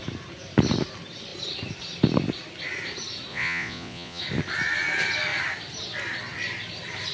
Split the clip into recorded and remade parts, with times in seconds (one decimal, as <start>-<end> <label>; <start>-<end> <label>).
0.0-3.3 recorded; 3.3-4.2 remade; 4.2-7.1 recorded